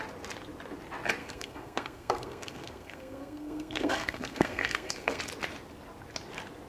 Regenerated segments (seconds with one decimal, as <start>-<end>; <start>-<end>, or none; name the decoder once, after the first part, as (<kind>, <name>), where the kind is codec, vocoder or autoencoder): 1.2-5.2 (codec, SNAC)